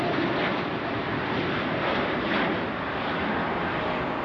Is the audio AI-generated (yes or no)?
no